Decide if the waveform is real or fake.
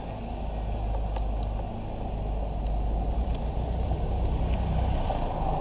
real